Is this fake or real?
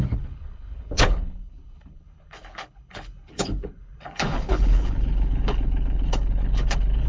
fake